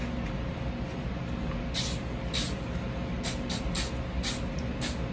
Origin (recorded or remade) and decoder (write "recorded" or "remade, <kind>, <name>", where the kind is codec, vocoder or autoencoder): recorded